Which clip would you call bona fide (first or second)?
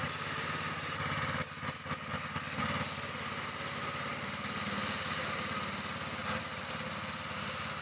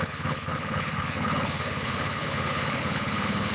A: first